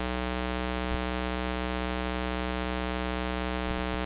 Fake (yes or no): no